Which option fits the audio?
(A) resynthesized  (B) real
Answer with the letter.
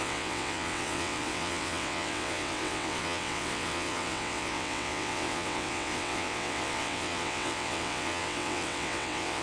A